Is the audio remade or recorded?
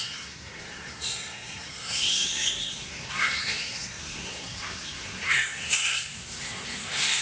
remade